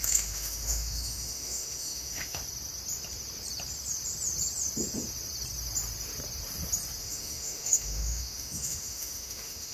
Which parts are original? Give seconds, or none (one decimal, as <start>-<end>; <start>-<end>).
2.4-7.0